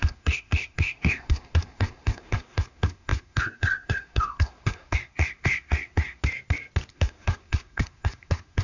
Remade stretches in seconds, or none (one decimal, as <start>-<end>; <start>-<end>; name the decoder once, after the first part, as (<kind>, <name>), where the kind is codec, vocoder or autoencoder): 0.0-6.2 (codec, SNAC); 6.9-8.6